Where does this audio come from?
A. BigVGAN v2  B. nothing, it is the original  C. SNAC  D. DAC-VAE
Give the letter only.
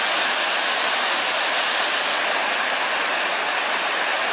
B